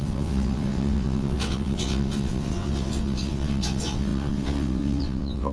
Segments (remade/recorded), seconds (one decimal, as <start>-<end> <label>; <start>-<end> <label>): 0.0-5.5 remade